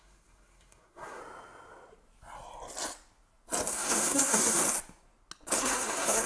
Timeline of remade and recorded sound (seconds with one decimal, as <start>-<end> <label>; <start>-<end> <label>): 0.0-1.2 remade; 1.2-3.7 recorded; 3.7-4.6 remade; 4.6-5.6 recorded; 5.6-6.3 remade